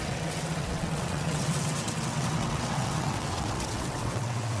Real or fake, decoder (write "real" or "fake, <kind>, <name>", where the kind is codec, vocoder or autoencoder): fake, vocoder, WaveNeXt